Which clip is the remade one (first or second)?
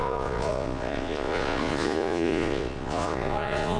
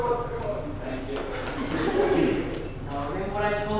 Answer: first